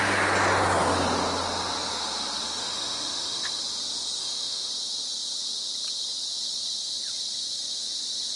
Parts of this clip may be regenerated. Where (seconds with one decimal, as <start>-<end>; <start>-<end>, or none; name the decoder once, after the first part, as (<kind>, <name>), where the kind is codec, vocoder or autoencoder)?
2.6-3.6 (autoencoder, DAC-VAE); 4.2-4.7